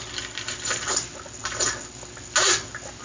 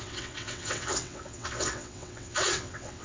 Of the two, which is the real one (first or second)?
first